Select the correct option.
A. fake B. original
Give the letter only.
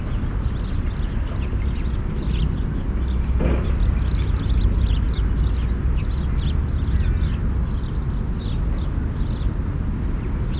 B